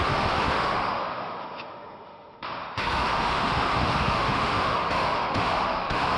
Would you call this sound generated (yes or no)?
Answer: yes